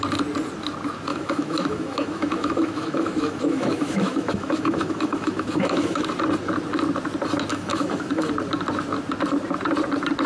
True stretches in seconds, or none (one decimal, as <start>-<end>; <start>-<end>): 0.0-1.1; 6.0-7.5; 8.3-10.3